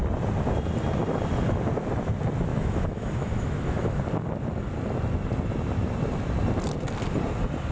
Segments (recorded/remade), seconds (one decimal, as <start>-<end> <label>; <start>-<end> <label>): 0.0-2.5 recorded; 2.5-4.0 remade; 4.0-7.7 recorded